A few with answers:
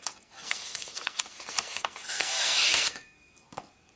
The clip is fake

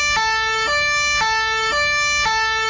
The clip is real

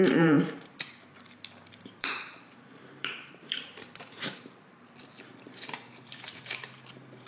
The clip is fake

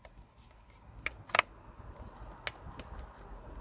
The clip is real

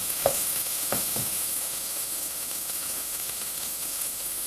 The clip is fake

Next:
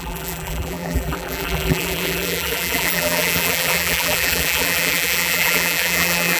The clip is fake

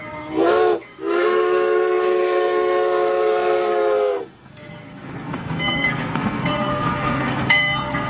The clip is fake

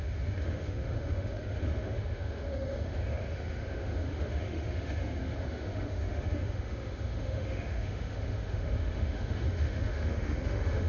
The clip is fake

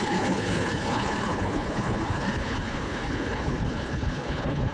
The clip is fake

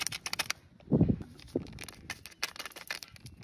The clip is real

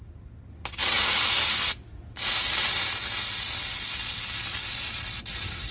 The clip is real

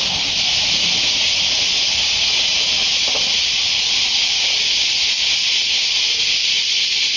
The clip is real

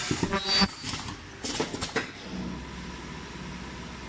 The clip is real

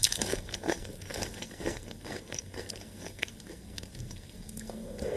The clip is fake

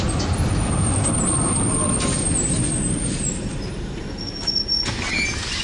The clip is real